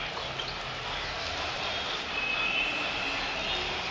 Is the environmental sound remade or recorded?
recorded